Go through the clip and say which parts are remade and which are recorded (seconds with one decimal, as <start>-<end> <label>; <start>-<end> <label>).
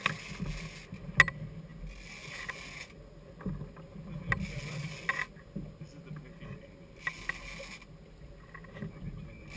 0.0-9.6 recorded